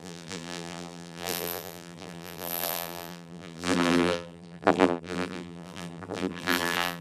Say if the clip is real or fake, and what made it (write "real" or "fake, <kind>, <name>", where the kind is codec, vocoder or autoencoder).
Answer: fake, vocoder, BigVGAN v2